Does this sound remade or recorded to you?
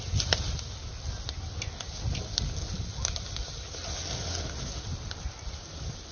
recorded